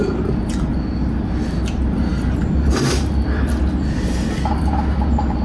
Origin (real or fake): real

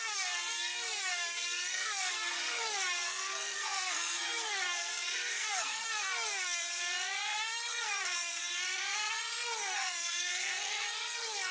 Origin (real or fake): fake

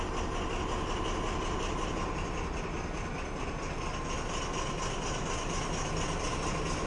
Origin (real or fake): real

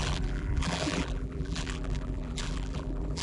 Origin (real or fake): fake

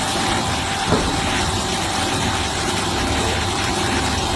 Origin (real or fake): fake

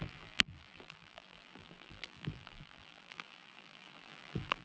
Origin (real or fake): fake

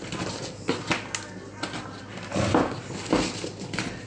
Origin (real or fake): real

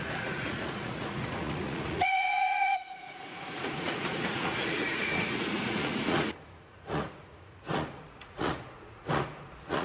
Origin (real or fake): fake